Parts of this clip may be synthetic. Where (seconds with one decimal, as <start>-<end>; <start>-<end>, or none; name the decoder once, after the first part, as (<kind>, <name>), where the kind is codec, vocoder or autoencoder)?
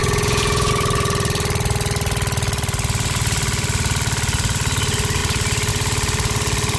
0.0-0.7 (vocoder, Vocos)